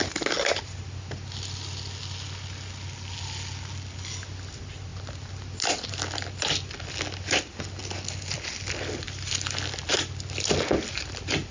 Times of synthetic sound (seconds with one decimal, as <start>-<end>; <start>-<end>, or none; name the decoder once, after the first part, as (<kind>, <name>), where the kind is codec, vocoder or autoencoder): none